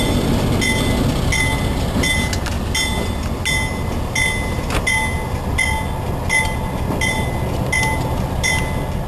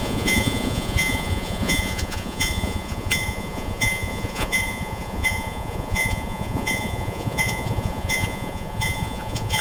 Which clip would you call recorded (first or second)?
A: first